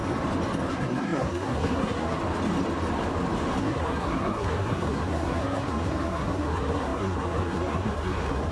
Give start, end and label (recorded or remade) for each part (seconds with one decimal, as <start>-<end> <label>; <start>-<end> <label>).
0.0-0.7 recorded; 0.7-2.2 remade; 2.2-3.6 recorded; 3.6-8.5 remade